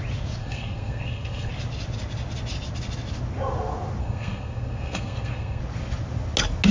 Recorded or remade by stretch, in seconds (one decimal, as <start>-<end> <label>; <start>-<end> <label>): 0.0-0.4 recorded; 0.4-1.5 remade; 1.5-4.0 recorded; 4.0-5.6 remade; 5.6-6.7 recorded